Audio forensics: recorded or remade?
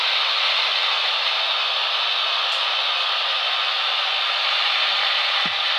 recorded